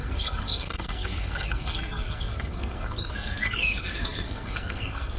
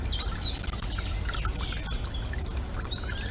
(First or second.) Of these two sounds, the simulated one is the first